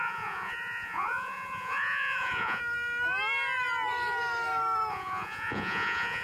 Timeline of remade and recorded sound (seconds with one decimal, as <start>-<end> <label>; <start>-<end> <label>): 0.0-2.6 remade; 2.6-4.9 recorded; 4.9-6.2 remade

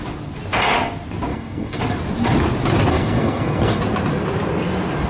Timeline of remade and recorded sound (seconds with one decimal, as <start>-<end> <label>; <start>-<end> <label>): 0.0-1.3 recorded; 1.3-1.8 remade; 1.8-2.9 recorded; 2.9-3.8 remade; 3.8-5.1 recorded